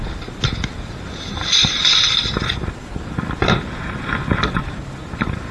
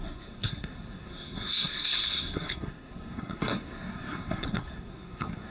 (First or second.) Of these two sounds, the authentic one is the first